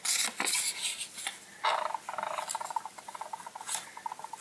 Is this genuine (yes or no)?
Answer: yes